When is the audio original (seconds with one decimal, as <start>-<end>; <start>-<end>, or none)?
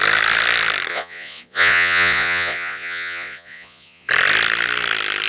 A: 0.0-0.9; 4.1-5.3